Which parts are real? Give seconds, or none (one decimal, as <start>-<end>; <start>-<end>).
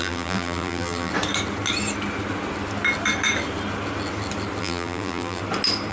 1.1-4.6; 5.4-5.9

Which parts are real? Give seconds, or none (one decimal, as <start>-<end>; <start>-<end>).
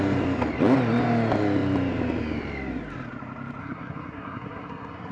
0.0-3.6